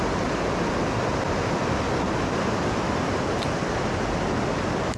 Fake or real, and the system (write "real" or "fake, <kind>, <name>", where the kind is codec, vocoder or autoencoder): real